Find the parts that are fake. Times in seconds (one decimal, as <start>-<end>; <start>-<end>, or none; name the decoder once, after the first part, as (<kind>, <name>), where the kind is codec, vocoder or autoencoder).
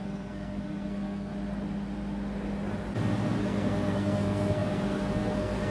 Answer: 0.0-1.3 (codec, SNAC); 3.4-5.7